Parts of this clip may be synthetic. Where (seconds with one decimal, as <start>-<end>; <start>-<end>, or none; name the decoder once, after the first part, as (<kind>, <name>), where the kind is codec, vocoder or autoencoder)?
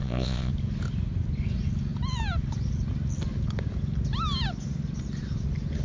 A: 0.0-0.5 (vocoder, Vocos)